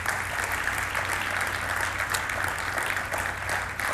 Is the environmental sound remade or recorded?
recorded